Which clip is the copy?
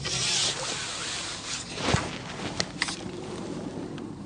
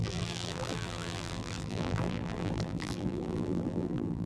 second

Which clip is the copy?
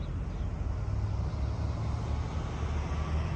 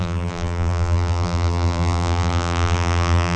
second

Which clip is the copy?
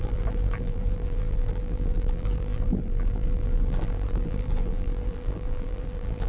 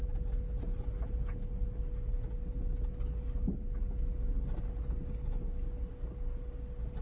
first